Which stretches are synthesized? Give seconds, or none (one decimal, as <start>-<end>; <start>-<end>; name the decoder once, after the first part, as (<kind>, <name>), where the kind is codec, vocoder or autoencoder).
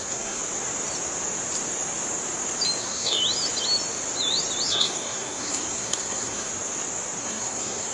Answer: 0.0-0.4 (codec, SNAC); 2.8-3.2; 4.7-6.5; 7.2-7.9